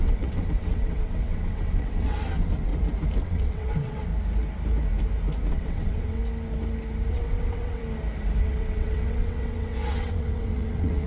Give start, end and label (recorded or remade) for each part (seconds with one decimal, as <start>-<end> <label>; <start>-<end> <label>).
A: 0.0-2.7 remade; 2.7-3.2 recorded; 3.2-4.1 remade; 4.1-5.5 recorded; 5.5-6.2 remade; 6.2-7.1 recorded; 7.1-7.8 remade; 7.8-8.4 recorded; 8.4-11.1 remade